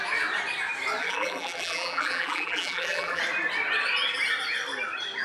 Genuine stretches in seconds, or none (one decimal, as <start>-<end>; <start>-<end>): 0.0-1.0; 3.2-5.2